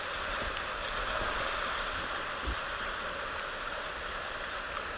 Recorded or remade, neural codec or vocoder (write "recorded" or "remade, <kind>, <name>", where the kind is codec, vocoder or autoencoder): recorded